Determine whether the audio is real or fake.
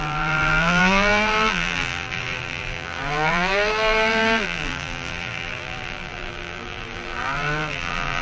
fake